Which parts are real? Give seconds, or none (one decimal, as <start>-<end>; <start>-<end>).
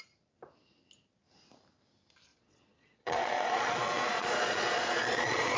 0.0-2.3